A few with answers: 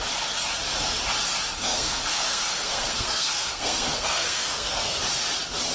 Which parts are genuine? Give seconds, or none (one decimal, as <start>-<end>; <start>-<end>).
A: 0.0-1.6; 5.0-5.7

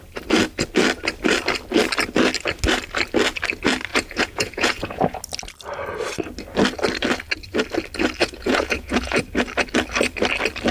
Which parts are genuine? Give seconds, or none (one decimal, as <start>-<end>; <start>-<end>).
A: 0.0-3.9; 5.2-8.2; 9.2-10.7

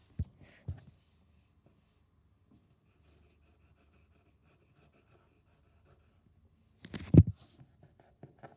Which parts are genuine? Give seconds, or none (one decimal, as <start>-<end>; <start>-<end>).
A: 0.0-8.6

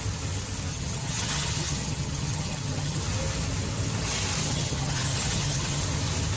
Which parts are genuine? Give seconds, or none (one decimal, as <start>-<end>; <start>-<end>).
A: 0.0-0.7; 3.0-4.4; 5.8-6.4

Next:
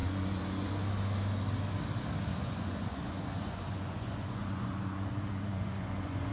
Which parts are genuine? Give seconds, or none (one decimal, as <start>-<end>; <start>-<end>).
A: 0.7-2.3

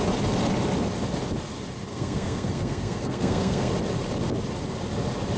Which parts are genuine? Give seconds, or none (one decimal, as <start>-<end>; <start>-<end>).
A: 0.0-1.9; 3.7-5.4

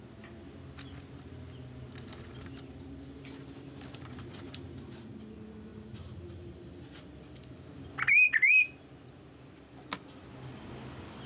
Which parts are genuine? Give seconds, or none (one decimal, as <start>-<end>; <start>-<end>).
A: 0.0-11.3